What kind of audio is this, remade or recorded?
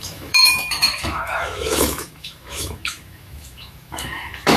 remade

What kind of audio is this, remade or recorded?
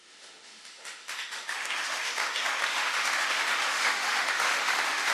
remade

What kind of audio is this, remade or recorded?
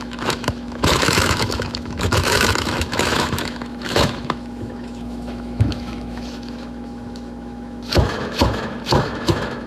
remade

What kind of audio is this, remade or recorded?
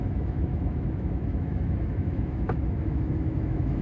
remade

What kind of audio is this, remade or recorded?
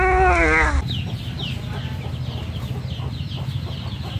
recorded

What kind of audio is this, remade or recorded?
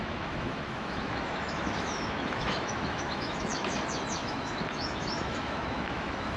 remade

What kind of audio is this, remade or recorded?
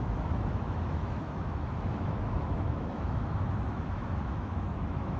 remade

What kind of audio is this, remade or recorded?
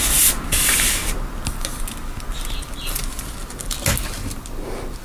recorded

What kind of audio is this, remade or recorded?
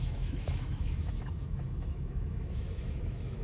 remade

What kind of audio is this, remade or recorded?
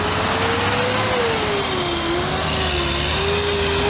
recorded